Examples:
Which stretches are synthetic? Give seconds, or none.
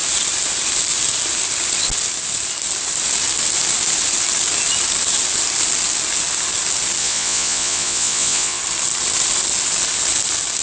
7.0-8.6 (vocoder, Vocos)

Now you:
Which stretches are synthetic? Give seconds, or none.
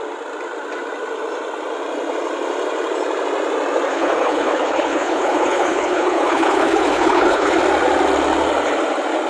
3.9-7.6 (codec, HILCodec)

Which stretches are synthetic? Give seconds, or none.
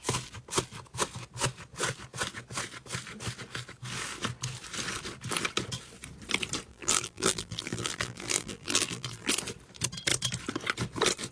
6.7-9.3 (vocoder, BigVGAN v2)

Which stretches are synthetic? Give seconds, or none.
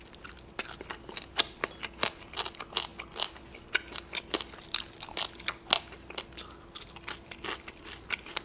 none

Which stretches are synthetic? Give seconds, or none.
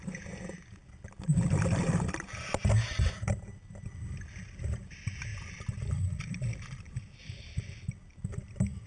none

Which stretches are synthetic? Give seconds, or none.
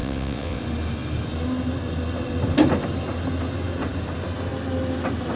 0.0-0.6 (vocoder, WaveNeXt)